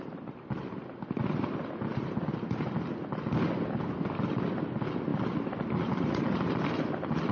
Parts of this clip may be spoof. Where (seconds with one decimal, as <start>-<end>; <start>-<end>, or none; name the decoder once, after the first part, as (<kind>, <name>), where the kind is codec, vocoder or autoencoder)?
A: none